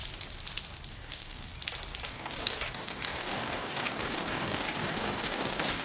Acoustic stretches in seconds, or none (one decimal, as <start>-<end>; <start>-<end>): 0.0-0.9; 1.5-2.1